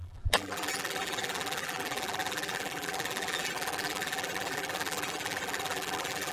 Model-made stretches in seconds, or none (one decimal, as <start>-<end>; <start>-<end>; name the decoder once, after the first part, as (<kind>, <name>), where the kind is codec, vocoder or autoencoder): 0.0-6.3 (vocoder, BigVGAN v2)